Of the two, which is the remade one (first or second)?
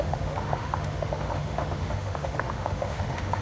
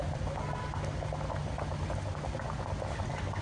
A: first